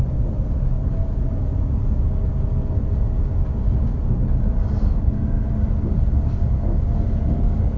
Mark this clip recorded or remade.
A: recorded